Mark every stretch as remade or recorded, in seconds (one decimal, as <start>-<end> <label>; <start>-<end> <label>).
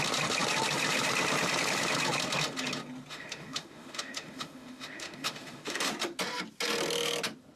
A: 0.0-3.1 recorded; 3.1-5.9 remade; 5.9-7.6 recorded